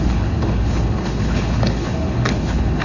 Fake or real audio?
fake